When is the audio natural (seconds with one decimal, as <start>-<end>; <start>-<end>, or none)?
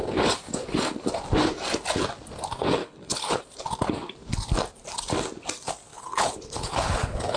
0.0-2.8; 3.4-5.9